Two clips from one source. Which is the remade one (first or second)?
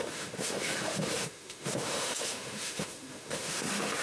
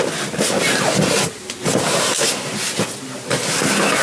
first